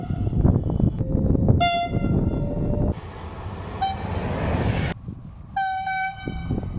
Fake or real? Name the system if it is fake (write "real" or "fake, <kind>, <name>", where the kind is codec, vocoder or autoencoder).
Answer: real